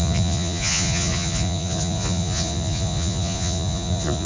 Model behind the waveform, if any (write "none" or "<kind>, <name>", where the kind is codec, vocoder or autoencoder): vocoder, Vocos